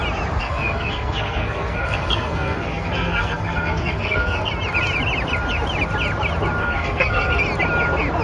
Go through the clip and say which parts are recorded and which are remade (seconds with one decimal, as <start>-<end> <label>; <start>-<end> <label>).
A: 0.0-0.4 recorded; 0.4-4.5 remade; 4.5-6.6 recorded; 6.6-7.4 remade; 7.4-8.2 recorded